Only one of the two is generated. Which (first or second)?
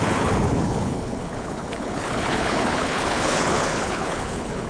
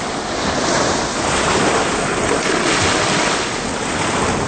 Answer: first